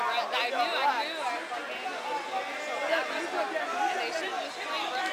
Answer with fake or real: real